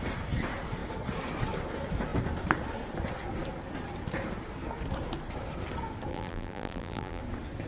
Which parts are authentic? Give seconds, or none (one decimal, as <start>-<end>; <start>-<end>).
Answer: 0.0-6.1; 7.2-7.7